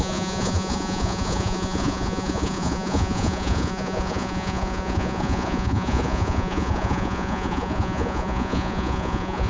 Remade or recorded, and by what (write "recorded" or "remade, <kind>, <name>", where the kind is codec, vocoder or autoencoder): remade, vocoder, Vocos